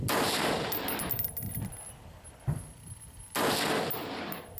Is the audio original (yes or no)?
yes